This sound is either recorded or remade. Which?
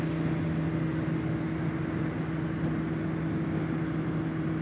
recorded